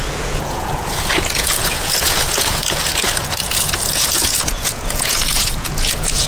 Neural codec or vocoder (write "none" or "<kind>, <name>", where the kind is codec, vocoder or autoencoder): vocoder, Vocos